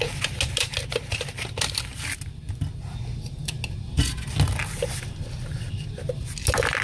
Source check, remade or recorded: recorded